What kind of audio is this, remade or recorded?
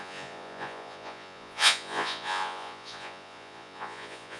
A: remade